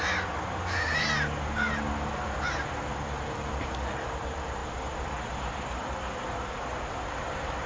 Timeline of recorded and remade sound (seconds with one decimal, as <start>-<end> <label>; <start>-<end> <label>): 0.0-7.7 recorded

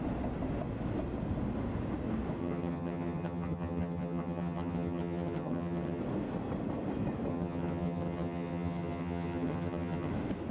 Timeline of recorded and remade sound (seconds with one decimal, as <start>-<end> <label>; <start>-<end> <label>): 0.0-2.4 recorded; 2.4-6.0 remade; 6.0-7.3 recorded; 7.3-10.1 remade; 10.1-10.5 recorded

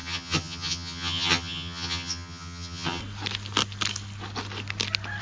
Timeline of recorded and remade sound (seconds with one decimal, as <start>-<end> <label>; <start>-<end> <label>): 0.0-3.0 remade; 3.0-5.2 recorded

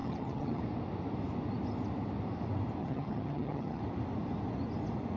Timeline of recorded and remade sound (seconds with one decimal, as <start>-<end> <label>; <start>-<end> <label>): 0.0-0.6 remade; 0.6-2.8 recorded; 2.8-3.8 remade; 3.8-5.2 recorded

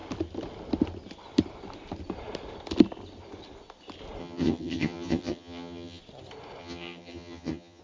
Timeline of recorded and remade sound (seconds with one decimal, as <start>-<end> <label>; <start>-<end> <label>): 0.0-4.2 recorded; 4.2-6.0 remade; 6.0-6.6 recorded; 6.6-7.8 remade

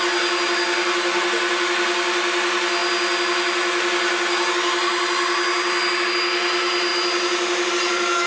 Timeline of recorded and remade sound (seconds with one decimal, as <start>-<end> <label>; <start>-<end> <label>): 0.0-8.3 recorded

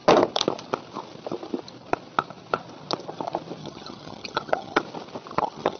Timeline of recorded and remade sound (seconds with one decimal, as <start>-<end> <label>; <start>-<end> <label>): 0.0-3.6 recorded; 3.6-4.8 remade; 4.8-5.3 recorded; 5.3-5.8 remade

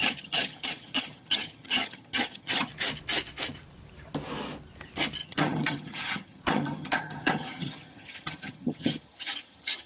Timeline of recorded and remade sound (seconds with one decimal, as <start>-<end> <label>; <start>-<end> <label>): 0.0-2.7 remade; 2.7-5.2 recorded; 5.2-9.9 remade